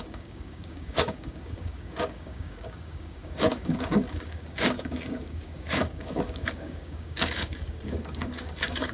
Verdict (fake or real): fake